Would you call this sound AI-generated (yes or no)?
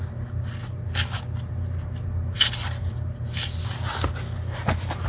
no